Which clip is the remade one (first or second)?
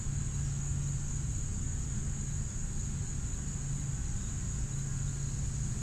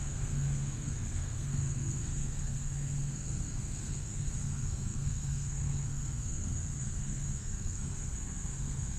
second